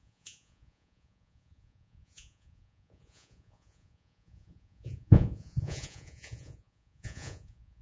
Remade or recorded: remade